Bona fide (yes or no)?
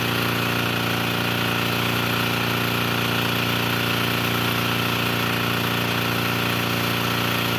yes